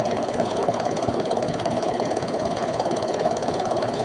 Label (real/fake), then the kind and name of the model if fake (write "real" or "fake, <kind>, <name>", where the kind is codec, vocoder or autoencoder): fake, codec, HILCodec